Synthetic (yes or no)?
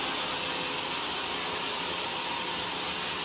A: no